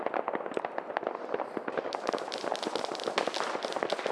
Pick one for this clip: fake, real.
real